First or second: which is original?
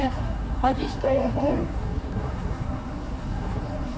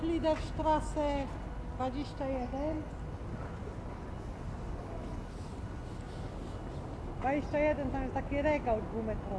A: second